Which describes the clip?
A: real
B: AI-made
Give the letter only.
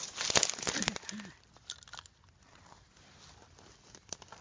A